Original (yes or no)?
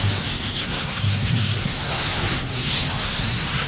no